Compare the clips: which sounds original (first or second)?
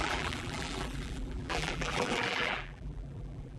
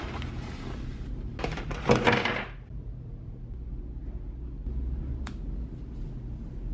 second